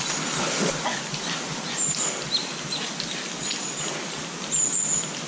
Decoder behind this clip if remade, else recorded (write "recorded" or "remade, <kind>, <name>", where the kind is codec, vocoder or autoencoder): recorded